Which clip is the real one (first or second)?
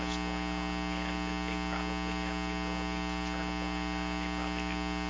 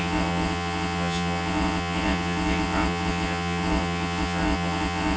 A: first